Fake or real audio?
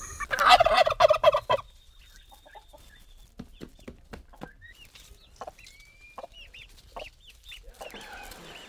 real